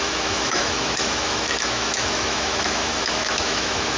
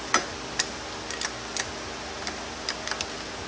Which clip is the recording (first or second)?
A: second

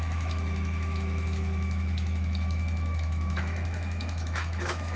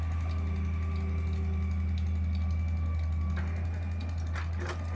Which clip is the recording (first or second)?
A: second